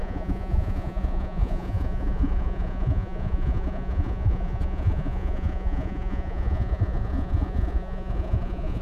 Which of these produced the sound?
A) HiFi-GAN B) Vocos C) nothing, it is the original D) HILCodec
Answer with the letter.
B